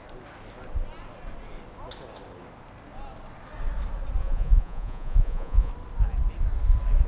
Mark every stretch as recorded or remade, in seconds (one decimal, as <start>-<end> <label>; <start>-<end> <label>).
0.0-4.2 recorded; 4.2-5.7 remade; 5.7-7.1 recorded